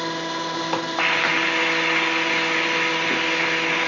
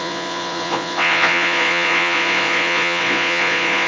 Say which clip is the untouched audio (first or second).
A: first